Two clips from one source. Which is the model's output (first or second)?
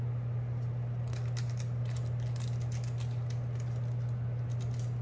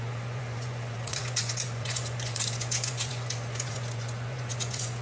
second